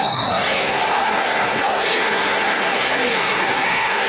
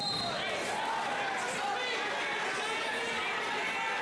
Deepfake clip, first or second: first